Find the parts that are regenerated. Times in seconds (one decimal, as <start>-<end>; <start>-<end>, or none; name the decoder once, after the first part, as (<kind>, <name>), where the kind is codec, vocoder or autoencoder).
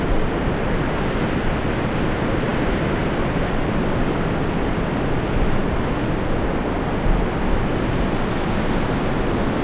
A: 2.5-3.8 (vocoder, BigVGAN v2)